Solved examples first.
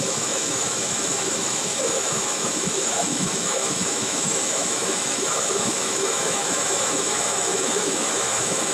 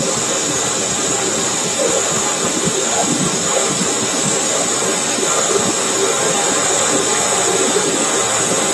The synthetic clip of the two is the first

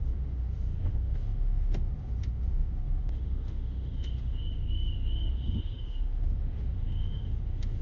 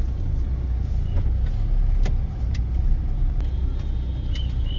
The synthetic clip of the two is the first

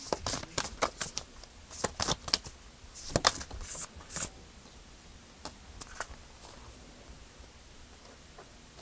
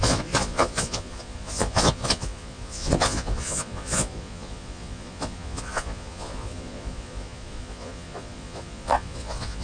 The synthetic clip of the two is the second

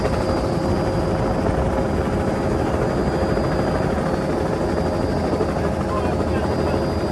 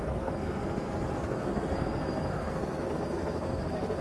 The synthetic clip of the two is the second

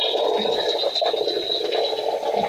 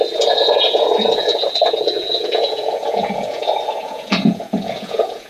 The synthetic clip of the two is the second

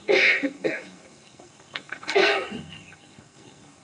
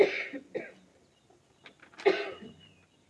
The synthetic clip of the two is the first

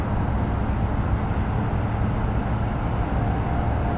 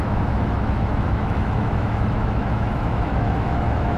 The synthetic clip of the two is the second